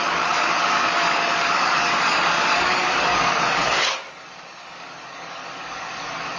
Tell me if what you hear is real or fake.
fake